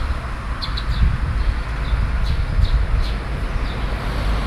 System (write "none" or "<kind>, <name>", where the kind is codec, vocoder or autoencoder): none